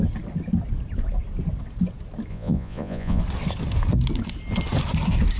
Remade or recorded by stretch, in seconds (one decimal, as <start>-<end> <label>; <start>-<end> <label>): 0.0-2.3 recorded; 2.3-3.2 remade; 3.2-5.4 recorded